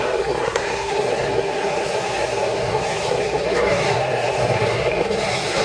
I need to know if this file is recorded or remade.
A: remade